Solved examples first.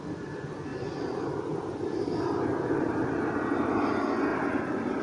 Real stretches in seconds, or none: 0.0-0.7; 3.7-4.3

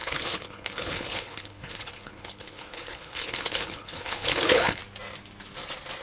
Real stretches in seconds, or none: 4.8-6.0

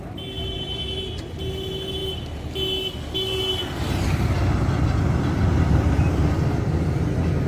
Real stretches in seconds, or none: 0.0-7.5

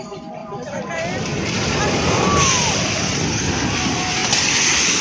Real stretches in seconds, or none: 0.0-0.4; 3.4-5.0

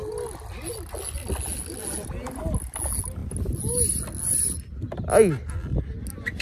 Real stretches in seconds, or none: 0.0-6.4

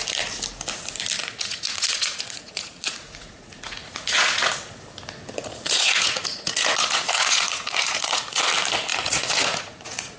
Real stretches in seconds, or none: 0.0-1.2; 4.5-5.4; 8.4-8.9